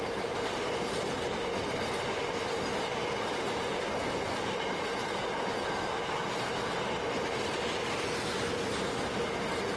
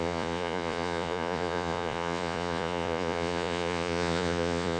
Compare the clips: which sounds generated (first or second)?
second